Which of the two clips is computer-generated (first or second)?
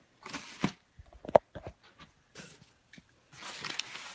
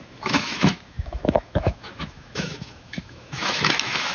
second